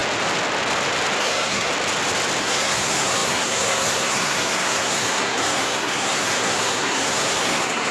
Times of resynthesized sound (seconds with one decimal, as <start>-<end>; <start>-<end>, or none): 1.2-1.7; 2.4-7.9